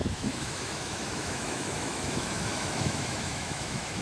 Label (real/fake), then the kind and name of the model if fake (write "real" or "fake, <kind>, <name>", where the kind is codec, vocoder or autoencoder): fake, autoencoder, DAC-VAE